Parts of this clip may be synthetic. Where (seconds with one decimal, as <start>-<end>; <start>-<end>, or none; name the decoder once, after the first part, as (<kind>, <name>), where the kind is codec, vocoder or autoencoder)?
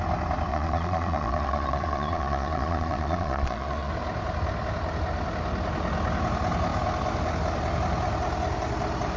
0.5-3.9 (vocoder, Vocos)